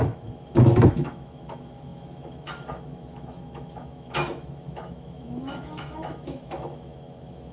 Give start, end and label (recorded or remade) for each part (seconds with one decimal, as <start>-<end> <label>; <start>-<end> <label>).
0.0-7.5 remade